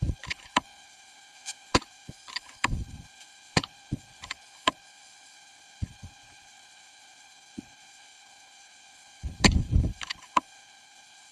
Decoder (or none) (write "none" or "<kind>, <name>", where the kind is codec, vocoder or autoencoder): codec, HILCodec